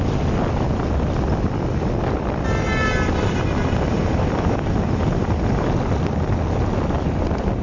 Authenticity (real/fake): real